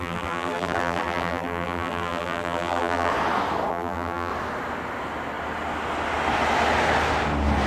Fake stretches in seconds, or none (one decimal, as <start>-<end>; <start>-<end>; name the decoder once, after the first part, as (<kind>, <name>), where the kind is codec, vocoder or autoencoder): 0.0-3.1 (vocoder, BigVGAN v2); 3.7-4.3